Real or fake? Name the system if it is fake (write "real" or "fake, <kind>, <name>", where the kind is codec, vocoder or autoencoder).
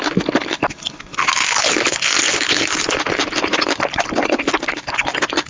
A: real